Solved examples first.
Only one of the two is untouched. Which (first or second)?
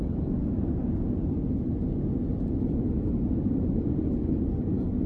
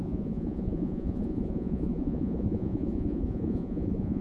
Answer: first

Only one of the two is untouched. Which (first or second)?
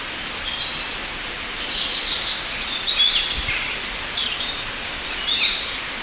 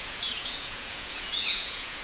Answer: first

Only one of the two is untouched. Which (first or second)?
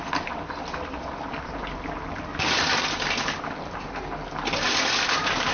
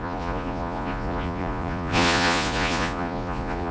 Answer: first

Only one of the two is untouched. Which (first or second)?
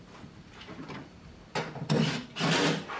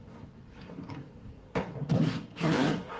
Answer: first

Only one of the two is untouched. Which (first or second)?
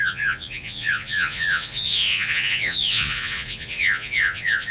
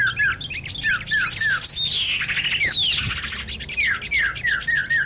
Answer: second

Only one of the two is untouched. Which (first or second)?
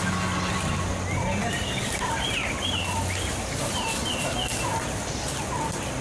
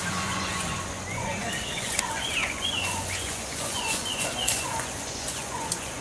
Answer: first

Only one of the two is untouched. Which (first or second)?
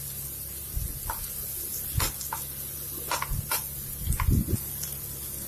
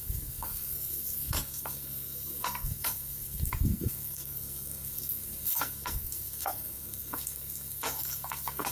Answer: first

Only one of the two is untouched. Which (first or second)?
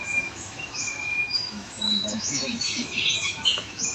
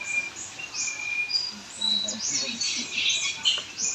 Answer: second